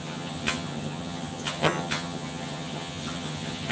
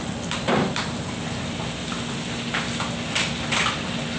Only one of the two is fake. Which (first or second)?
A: first